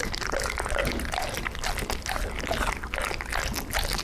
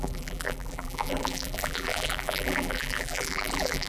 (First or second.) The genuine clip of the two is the first